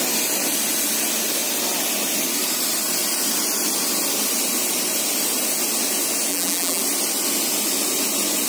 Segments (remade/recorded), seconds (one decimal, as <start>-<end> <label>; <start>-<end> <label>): 0.0-6.3 recorded; 6.3-6.8 remade; 6.8-8.5 recorded